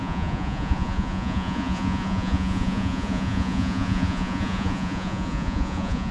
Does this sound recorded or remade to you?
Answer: remade